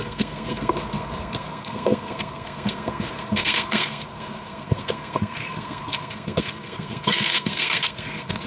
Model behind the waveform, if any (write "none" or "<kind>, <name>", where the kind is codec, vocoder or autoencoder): codec, SNAC